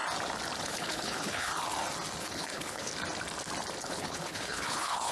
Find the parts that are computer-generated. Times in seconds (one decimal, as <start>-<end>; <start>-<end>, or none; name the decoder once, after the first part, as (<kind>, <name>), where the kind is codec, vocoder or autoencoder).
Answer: 0.6-1.5 (codec, HILCodec); 2.2-2.9; 3.8-5.1